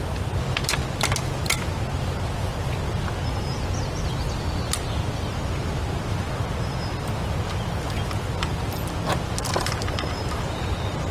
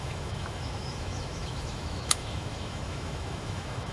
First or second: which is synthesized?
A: second